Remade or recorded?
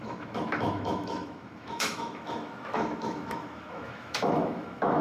remade